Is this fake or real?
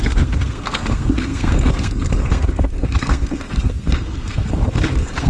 fake